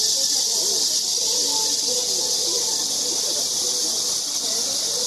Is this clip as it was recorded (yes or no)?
yes